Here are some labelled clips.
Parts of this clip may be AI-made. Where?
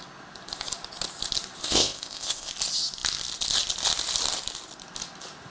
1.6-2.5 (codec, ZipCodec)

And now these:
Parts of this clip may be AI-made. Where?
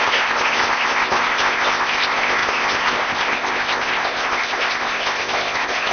0.0-5.9 (codec, ZipCodec)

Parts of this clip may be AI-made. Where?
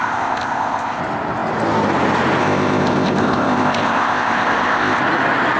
0.0-1.0 (codec, ZipCodec); 2.4-5.0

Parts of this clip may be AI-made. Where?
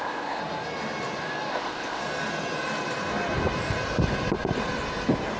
0.0-0.4 (codec, ZipCodec); 1.5-2.0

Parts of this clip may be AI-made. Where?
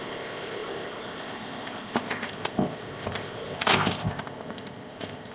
0.0-5.3 (codec, ZipCodec)